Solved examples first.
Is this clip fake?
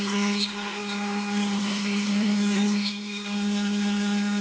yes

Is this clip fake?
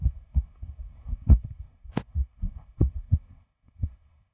yes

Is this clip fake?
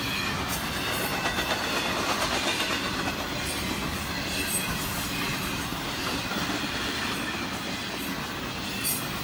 no